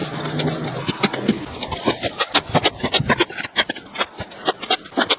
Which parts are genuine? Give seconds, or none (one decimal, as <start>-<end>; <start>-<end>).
0.0-5.2